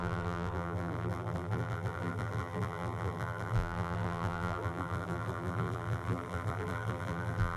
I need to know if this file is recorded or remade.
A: remade